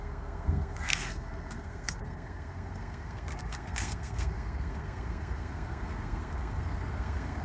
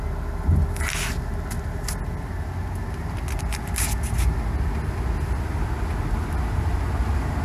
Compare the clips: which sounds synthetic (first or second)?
first